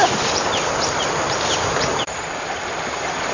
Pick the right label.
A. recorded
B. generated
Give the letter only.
A